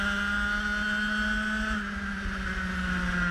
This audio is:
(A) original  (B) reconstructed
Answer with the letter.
A